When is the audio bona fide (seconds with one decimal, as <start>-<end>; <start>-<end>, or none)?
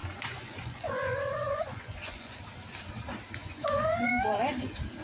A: 2.4-3.4; 4.1-5.0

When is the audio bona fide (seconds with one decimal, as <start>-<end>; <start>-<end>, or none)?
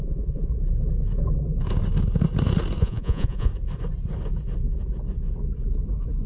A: 0.5-2.8; 3.5-6.3